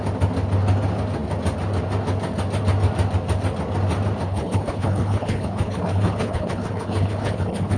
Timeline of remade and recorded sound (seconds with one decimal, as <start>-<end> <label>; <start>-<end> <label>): 0.0-4.3 recorded; 4.3-7.8 remade